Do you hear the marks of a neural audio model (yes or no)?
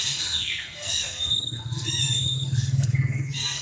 yes